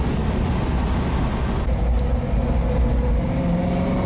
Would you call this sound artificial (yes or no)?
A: no